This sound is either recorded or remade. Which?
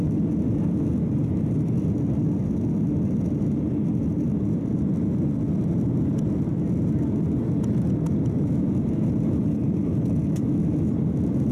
recorded